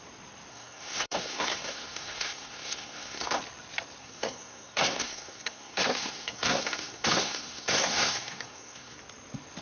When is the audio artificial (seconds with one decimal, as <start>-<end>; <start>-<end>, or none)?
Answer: 0.5-3.4; 4.0-9.0